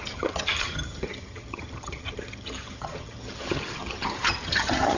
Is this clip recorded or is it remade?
remade